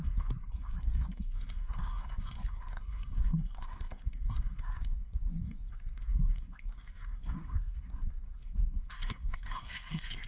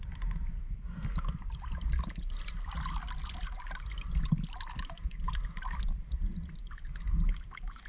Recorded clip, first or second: second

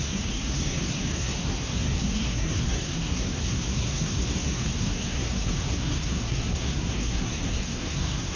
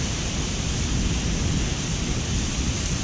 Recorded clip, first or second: second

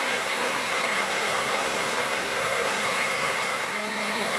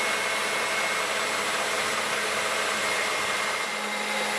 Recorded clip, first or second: second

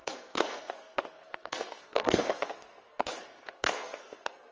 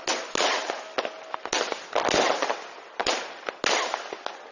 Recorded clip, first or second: second